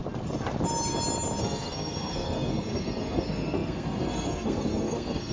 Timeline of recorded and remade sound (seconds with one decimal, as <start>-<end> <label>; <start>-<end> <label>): 0.0-1.4 recorded; 1.4-5.3 remade